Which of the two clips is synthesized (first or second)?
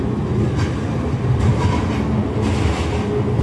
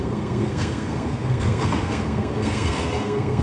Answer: second